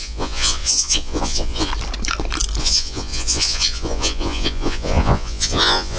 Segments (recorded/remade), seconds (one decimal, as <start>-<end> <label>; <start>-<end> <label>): 0.0-1.7 remade; 1.7-2.6 recorded; 2.6-6.0 remade

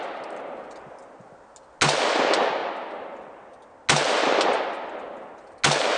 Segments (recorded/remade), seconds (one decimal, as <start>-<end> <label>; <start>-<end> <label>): 0.0-6.0 recorded

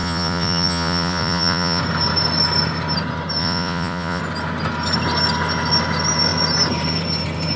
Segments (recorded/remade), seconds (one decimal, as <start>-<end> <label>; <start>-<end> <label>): 0.0-1.8 remade; 1.8-3.4 recorded; 3.4-4.2 remade; 4.2-7.6 recorded